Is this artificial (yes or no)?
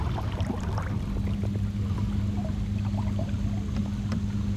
no